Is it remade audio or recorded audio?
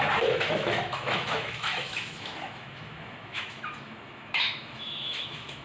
remade